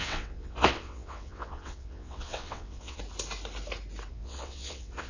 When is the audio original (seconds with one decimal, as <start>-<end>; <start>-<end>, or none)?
3.0-4.1